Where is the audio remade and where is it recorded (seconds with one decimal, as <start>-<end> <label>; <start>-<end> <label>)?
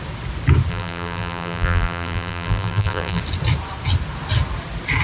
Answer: 0.0-0.7 recorded; 0.7-3.2 remade; 3.2-5.0 recorded